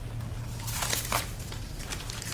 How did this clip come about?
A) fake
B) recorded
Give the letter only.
B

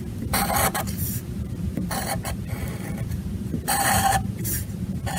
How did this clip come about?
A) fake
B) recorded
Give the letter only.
A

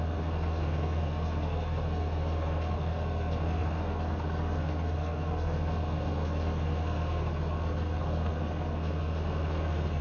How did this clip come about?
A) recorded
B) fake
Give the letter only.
B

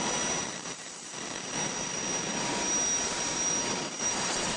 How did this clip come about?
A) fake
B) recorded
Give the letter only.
A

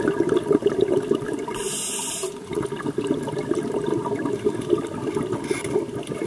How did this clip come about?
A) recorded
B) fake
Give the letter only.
A